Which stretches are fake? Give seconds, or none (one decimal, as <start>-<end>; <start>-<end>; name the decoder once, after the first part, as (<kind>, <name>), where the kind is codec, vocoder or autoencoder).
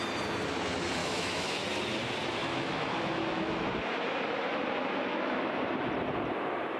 1.0-1.7 (autoencoder, DAC-VAE); 2.4-3.7; 5.1-5.6